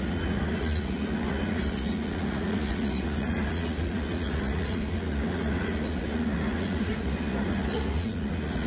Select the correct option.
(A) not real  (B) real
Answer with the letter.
A